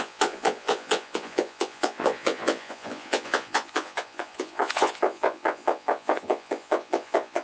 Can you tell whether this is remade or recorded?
remade